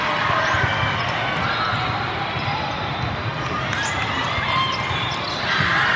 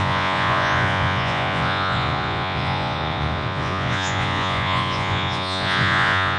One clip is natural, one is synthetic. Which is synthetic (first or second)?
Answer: second